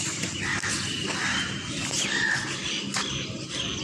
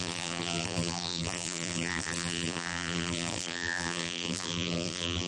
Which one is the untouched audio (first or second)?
first